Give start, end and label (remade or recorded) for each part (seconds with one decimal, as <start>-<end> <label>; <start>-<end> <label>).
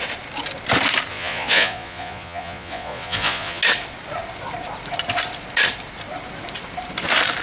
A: 0.0-1.1 recorded; 1.1-3.6 remade; 3.6-7.4 recorded